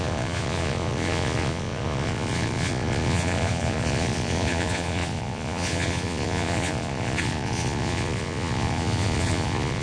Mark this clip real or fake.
fake